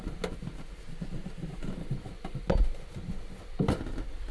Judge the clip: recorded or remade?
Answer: recorded